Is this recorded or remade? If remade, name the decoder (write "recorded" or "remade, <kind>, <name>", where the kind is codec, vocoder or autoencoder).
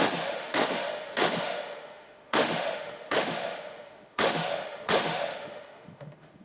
remade, autoencoder, DAC-VAE